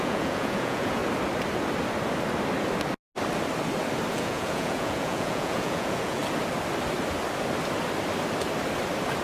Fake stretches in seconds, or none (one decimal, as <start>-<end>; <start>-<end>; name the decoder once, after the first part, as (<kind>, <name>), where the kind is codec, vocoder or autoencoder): 0.0-1.0 (vocoder, Vocos); 4.1-6.2